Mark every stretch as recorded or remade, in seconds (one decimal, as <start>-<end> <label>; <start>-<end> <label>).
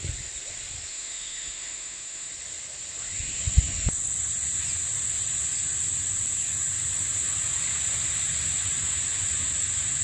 0.0-0.9 recorded; 0.9-2.3 remade; 2.3-10.0 recorded